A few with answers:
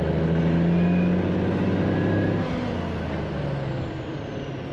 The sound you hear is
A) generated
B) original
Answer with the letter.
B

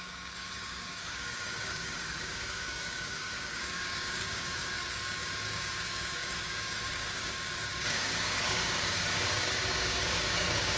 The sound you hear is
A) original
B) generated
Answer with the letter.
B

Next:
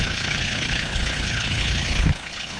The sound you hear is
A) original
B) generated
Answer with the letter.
B